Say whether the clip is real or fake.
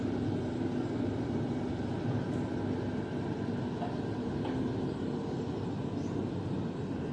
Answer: real